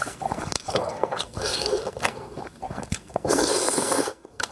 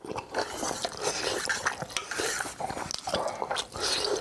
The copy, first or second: first